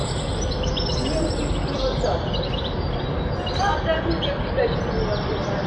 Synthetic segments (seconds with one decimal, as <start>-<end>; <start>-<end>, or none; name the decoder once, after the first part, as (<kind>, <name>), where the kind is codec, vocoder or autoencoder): none